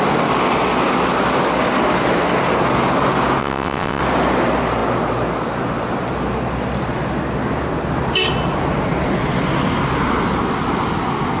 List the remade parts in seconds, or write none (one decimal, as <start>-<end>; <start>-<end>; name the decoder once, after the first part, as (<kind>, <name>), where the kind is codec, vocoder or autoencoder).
3.4-4.0 (vocoder, WaveNeXt)